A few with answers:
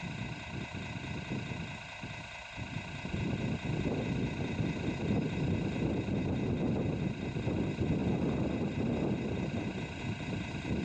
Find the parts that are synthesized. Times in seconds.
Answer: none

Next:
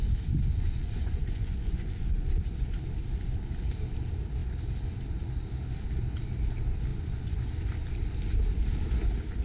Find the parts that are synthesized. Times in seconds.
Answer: 0.6-2.3 (vocoder, Vocos); 6.9-7.4

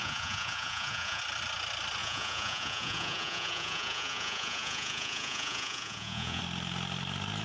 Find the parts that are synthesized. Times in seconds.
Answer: 0.0-1.2 (vocoder, Vocos); 2.0-6.4